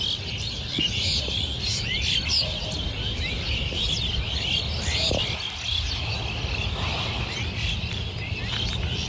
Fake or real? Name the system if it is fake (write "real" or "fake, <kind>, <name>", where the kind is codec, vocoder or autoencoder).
real